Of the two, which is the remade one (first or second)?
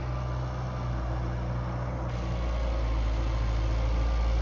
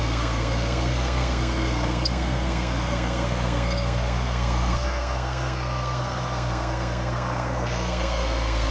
second